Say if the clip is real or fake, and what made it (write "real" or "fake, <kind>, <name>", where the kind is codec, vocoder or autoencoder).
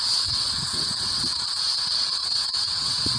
fake, vocoder, WaveNeXt